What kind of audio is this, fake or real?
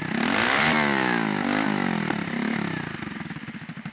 real